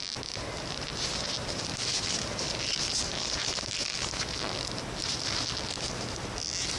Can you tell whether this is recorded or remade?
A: recorded